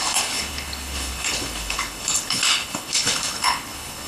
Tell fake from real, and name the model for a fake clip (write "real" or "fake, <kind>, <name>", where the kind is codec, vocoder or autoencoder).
fake, codec, HILCodec